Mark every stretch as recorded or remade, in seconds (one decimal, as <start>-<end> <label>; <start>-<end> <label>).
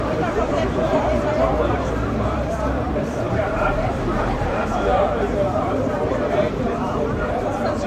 0.0-7.9 remade